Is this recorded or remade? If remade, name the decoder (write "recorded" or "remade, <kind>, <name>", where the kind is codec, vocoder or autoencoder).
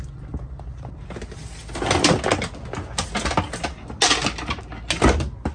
recorded